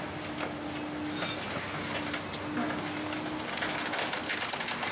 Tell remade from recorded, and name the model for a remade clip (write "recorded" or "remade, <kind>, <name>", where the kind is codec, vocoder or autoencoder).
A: recorded